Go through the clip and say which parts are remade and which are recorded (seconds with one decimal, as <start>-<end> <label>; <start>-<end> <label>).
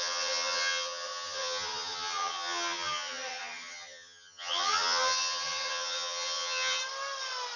0.0-6.8 remade; 6.8-7.6 recorded